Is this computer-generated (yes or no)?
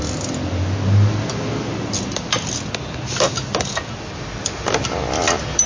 no